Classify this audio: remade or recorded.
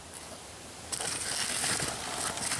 recorded